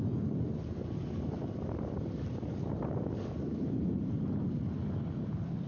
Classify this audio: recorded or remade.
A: recorded